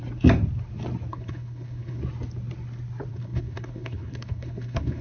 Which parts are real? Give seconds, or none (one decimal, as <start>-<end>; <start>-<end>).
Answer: 0.0-1.1; 2.0-3.1